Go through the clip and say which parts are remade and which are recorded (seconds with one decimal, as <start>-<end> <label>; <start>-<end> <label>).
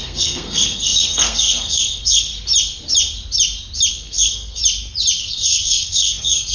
0.0-2.3 remade; 2.3-3.9 recorded; 3.9-4.6 remade; 4.6-5.2 recorded; 5.2-6.5 remade